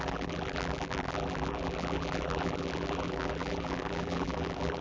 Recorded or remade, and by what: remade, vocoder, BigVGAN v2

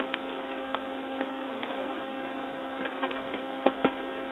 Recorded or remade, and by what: remade, codec, SNAC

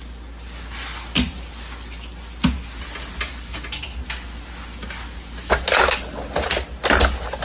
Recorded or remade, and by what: recorded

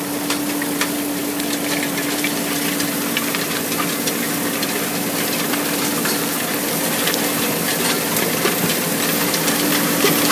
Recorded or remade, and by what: recorded